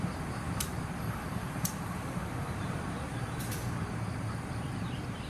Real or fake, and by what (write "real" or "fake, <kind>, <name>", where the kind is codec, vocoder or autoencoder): fake, vocoder, BigVGAN v2